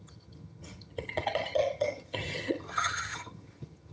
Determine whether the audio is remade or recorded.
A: remade